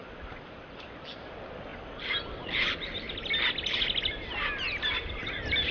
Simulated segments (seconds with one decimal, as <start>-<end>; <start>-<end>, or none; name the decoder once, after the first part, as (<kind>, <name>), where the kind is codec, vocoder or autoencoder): none